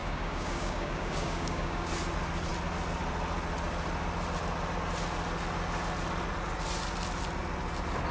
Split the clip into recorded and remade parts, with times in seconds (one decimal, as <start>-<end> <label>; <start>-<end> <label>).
0.0-1.9 remade; 1.9-8.1 recorded